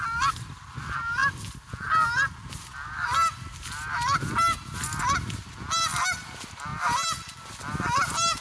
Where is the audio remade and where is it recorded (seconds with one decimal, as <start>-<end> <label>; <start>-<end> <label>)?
0.0-8.4 recorded